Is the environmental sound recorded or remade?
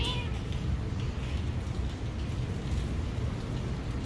recorded